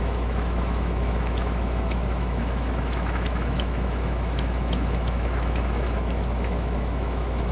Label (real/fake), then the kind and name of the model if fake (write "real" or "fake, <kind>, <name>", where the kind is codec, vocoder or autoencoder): fake, autoencoder, DAC-VAE